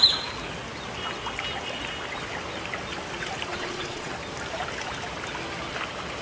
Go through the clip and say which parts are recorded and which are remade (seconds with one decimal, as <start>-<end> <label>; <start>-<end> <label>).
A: 0.0-3.5 recorded; 3.5-4.1 remade; 4.1-6.2 recorded